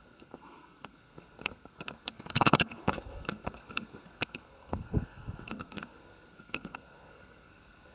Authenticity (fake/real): fake